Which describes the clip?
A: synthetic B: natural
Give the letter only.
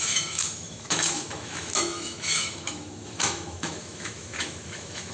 A